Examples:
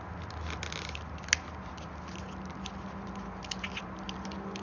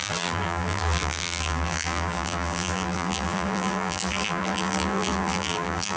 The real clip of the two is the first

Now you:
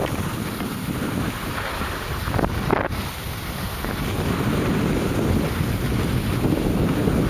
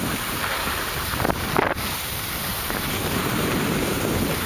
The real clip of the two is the first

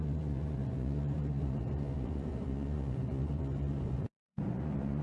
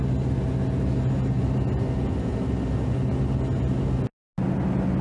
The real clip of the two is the second